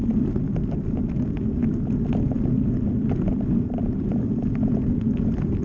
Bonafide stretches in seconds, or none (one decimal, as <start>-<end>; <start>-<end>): 0.0-5.6